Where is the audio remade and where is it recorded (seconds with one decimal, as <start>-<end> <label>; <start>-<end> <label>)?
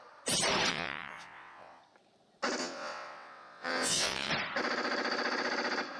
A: 0.0-0.7 recorded; 0.7-1.8 remade; 1.8-2.6 recorded; 2.6-4.3 remade; 4.3-6.0 recorded